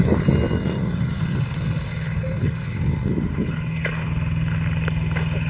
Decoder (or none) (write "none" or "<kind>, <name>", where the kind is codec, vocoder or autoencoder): none